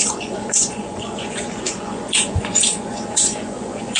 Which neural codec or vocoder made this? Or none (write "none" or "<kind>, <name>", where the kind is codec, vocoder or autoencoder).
vocoder, Vocos